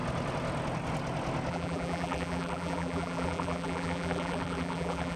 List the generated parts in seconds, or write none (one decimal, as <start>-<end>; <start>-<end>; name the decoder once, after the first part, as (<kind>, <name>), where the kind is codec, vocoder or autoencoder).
1.5-5.2 (vocoder, BigVGAN v2)

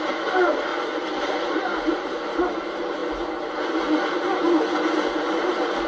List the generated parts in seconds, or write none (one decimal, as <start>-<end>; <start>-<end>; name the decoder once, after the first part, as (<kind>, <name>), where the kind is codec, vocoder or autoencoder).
0.0-0.7 (vocoder, BigVGAN v2); 1.3-3.0; 5.3-5.9

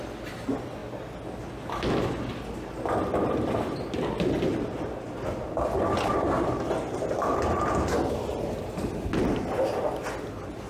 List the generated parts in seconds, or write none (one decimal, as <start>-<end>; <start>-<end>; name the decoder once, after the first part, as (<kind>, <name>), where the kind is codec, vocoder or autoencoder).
4.5-5.1 (vocoder, BigVGAN v2)

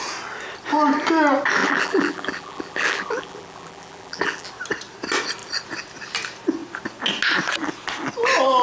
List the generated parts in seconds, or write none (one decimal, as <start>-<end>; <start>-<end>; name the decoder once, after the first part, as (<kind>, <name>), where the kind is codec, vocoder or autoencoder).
1.6-4.5 (vocoder, BigVGAN v2)